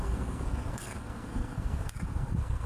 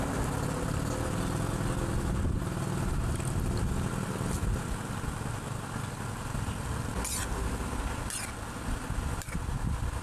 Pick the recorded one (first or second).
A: second